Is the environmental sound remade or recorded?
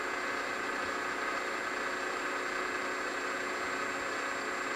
recorded